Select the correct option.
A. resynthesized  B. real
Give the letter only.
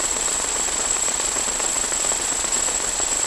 A